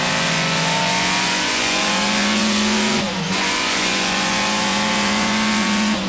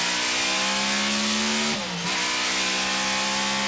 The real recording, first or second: second